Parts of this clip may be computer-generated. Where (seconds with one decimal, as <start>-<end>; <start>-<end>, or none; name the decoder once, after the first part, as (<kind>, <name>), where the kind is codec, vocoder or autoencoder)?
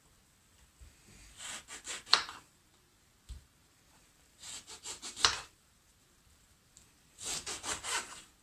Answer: 2.1-7.1 (vocoder, BigVGAN v2)